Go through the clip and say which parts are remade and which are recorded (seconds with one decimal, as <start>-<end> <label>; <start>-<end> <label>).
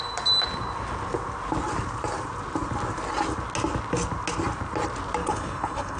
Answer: 0.0-5.2 recorded; 5.2-6.0 remade